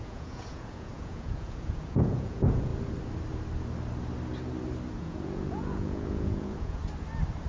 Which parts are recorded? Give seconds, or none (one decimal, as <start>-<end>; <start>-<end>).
2.7-4.9; 6.8-7.5